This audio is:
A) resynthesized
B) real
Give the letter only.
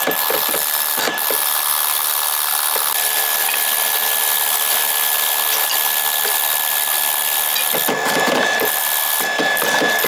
B